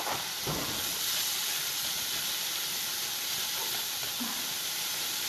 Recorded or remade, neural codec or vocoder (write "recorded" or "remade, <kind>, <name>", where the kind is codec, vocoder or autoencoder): recorded